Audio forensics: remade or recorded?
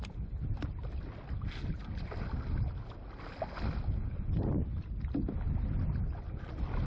recorded